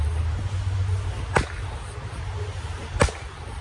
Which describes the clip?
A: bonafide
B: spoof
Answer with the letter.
A